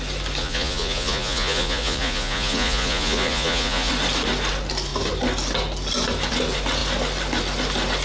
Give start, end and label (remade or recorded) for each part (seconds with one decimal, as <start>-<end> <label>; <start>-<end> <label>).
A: 0.0-0.4 recorded; 0.4-3.9 remade; 3.9-8.0 recorded

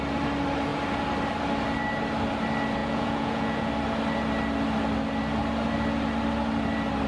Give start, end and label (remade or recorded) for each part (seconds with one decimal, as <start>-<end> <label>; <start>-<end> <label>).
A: 0.0-2.8 recorded; 2.8-3.7 remade; 3.7-7.1 recorded

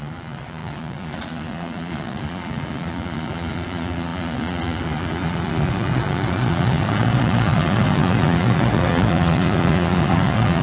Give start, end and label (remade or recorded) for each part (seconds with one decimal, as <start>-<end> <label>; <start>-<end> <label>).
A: 0.0-10.6 remade

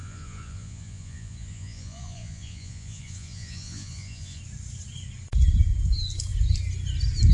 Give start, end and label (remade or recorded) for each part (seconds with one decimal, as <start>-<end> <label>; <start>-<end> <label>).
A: 0.0-4.4 remade; 4.4-7.3 recorded

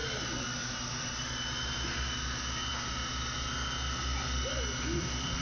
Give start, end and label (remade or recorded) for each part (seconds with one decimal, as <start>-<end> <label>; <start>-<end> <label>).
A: 0.0-5.4 recorded

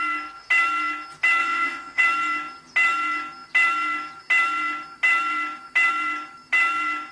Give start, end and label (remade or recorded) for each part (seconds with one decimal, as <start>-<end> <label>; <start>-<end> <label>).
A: 0.0-1.4 recorded; 1.4-2.0 remade; 2.0-7.1 recorded

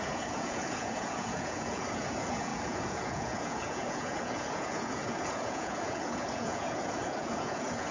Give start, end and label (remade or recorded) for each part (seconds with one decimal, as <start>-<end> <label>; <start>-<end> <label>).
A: 0.0-7.9 remade